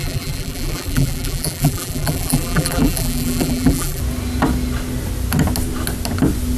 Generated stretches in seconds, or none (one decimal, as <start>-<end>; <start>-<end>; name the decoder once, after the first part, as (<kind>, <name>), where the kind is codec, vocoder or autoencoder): 0.0-4.0 (vocoder, BigVGAN v2)